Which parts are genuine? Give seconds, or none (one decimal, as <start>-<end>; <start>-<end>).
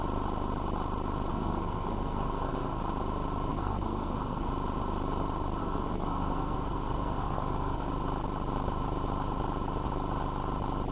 0.0-1.3; 2.8-3.5; 4.5-5.6; 7.9-10.9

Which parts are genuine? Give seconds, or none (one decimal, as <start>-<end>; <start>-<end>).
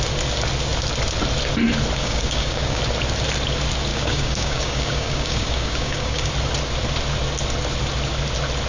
0.0-2.0; 2.8-3.9; 6.3-8.7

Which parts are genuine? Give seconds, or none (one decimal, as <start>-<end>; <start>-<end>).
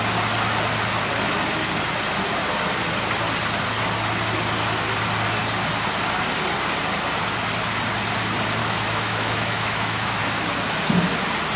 0.0-8.6; 10.2-11.6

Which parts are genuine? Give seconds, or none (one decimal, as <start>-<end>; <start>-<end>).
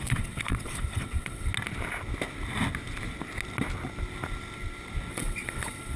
1.5-5.1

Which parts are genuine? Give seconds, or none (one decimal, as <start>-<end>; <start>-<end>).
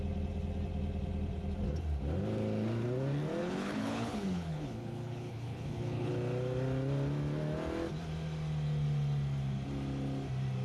0.0-3.4; 6.1-10.6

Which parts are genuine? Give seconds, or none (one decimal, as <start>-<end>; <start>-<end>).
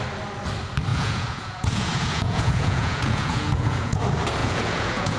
0.0-0.9; 4.0-4.4